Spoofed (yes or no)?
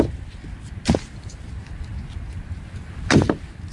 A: no